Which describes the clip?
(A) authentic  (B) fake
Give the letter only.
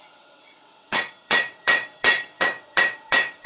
B